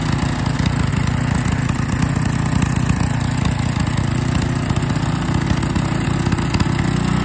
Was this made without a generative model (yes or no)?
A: yes